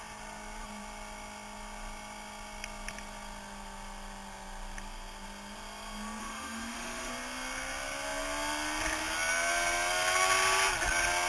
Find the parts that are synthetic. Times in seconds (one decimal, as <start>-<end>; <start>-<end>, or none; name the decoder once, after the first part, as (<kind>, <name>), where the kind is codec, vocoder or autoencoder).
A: 6.2-7.1 (autoencoder, DAC-VAE)